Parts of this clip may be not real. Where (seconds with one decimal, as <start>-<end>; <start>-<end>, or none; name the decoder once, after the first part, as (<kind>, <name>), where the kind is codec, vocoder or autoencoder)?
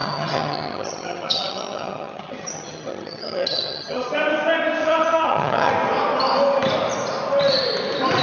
0.0-4.1 (vocoder, HiFi-GAN); 4.8-5.7